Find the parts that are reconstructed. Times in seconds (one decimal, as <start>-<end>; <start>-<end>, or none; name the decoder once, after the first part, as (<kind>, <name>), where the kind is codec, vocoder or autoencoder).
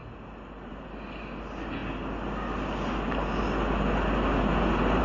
none